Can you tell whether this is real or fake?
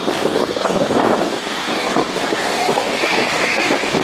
fake